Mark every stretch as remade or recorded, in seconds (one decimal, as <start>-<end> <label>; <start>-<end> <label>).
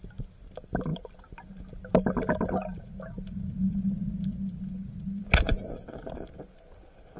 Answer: 0.0-7.2 recorded